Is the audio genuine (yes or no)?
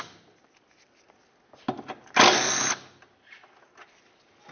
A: yes